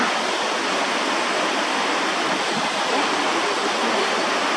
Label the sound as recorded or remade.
recorded